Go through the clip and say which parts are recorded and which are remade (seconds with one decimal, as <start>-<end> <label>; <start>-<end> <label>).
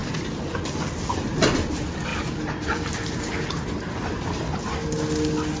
0.0-0.5 remade; 0.5-2.1 recorded; 2.1-3.3 remade; 3.3-5.6 recorded